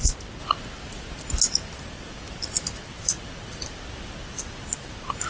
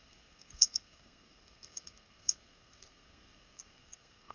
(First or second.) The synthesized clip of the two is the second